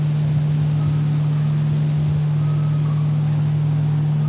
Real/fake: real